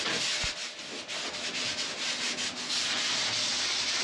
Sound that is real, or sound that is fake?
real